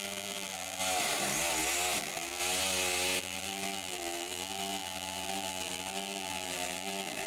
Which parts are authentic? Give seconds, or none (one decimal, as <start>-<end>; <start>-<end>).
0.8-2.0; 2.4-3.2